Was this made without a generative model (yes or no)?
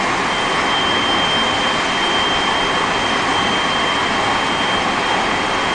no